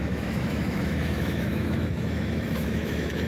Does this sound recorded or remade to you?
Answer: remade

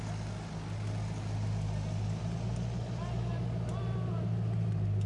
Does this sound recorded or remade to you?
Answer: recorded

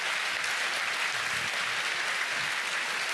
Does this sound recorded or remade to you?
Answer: recorded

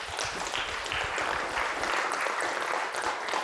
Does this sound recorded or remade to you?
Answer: recorded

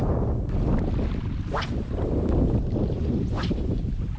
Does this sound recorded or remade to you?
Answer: recorded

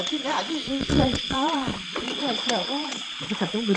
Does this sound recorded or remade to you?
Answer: remade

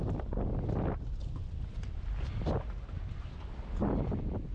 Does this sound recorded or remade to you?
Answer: recorded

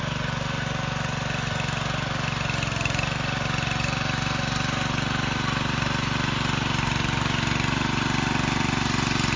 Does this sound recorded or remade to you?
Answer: recorded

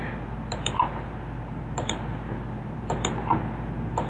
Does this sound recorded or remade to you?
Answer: recorded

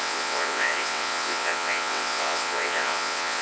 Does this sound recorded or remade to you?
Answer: remade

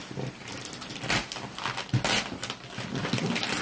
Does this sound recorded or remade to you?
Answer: recorded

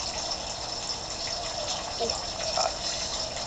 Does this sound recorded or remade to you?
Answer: recorded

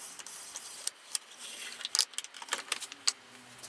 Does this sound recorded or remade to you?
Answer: recorded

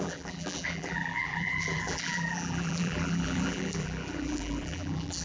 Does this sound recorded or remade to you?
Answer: remade